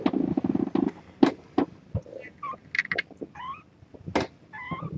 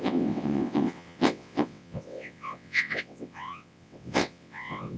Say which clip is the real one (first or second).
first